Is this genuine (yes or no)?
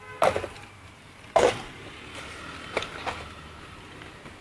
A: yes